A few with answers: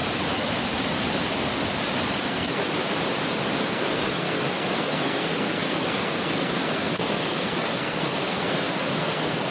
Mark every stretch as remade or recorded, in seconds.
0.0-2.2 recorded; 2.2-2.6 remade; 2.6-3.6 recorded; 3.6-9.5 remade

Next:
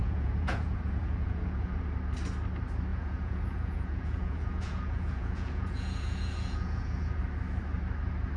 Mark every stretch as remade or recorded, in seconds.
0.0-1.8 remade; 1.8-2.9 recorded; 2.9-7.2 remade; 7.2-8.4 recorded

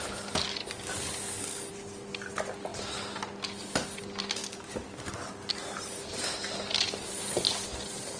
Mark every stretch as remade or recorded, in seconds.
0.0-0.6 recorded; 0.6-1.7 remade; 1.7-4.4 recorded; 4.4-5.3 remade; 5.3-8.2 recorded

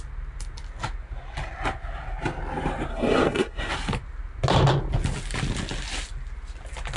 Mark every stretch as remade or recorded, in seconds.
0.0-2.9 recorded; 2.9-3.7 remade; 3.7-7.0 recorded

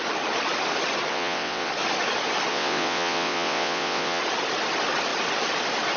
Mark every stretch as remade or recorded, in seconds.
0.0-1.1 recorded; 1.1-1.7 remade; 1.7-2.5 recorded; 2.5-4.2 remade; 4.2-6.0 recorded

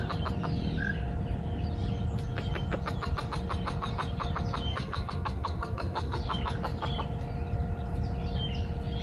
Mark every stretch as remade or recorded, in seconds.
0.0-4.7 recorded; 4.7-6.2 remade; 6.2-9.0 recorded